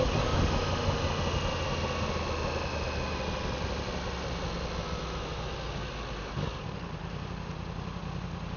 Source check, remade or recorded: recorded